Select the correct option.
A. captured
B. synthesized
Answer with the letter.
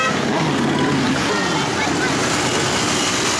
A